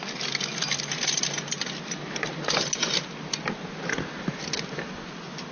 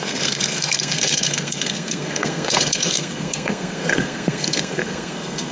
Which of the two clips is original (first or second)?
first